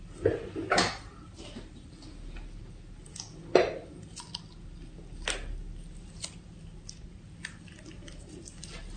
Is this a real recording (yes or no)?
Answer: yes